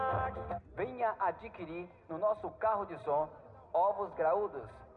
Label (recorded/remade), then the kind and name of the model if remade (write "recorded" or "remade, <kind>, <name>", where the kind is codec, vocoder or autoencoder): recorded